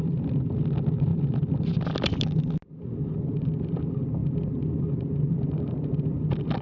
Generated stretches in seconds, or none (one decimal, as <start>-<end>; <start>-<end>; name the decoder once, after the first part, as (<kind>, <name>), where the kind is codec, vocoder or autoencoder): none